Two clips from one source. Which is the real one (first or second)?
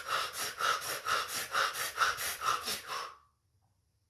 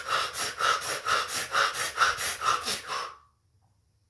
second